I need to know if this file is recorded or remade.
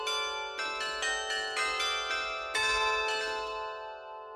recorded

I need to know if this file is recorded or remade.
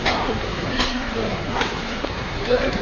remade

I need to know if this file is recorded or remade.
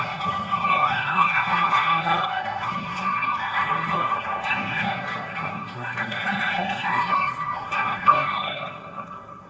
remade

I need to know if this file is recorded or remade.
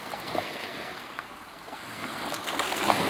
remade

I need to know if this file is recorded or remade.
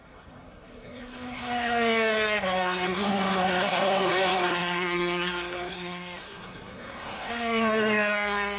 remade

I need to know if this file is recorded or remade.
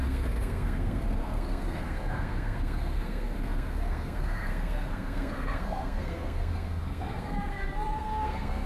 remade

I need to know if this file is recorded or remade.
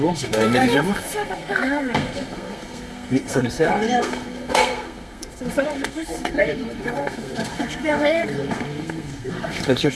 remade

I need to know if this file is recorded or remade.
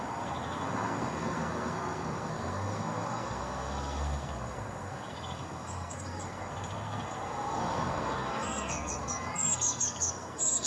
remade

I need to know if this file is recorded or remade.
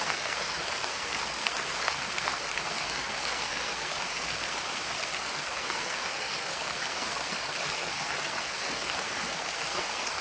remade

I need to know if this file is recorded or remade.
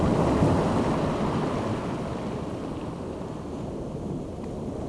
recorded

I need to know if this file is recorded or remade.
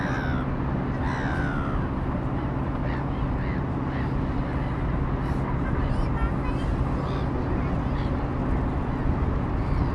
recorded